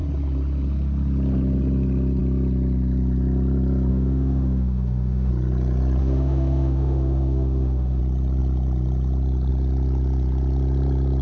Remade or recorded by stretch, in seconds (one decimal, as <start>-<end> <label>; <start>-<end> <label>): 0.0-3.9 recorded; 3.9-5.3 remade; 5.3-6.0 recorded; 6.0-8.0 remade; 8.0-11.2 recorded